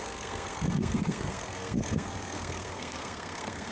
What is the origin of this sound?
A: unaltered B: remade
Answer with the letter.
B